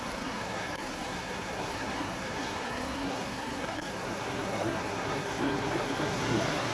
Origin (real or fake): fake